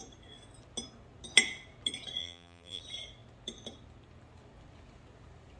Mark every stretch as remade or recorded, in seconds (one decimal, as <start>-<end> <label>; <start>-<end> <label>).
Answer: 0.0-2.2 recorded; 2.2-2.8 remade; 2.8-5.6 recorded